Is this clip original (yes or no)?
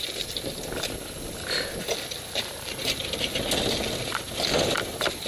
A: yes